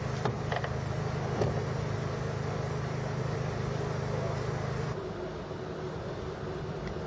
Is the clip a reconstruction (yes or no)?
no